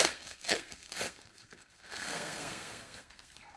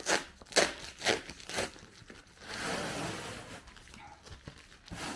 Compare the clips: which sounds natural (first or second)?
second